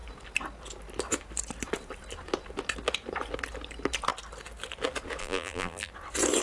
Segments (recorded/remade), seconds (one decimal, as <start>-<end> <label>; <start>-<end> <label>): 0.0-5.2 recorded; 5.2-5.9 remade; 5.9-6.4 recorded

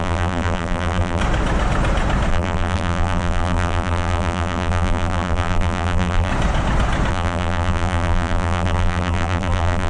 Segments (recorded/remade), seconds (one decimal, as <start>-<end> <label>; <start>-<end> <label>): 0.0-1.2 remade; 1.2-2.3 recorded; 2.3-6.3 remade; 6.3-7.1 recorded; 7.1-9.9 remade